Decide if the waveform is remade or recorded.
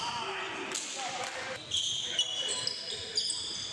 recorded